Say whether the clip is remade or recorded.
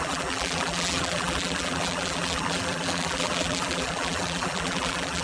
remade